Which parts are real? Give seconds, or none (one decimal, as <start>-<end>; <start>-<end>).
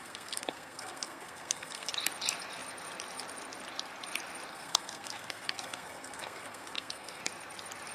1.9-4.5; 7.2-7.9